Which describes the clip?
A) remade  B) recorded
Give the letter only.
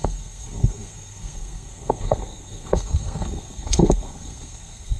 A